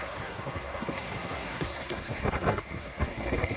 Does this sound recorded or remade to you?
remade